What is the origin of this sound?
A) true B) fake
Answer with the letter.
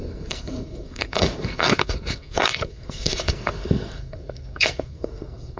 B